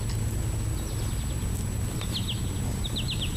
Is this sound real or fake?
real